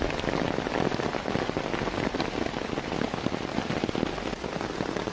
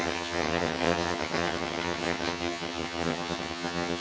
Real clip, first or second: first